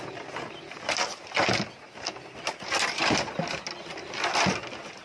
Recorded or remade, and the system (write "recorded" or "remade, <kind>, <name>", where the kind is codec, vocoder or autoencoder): recorded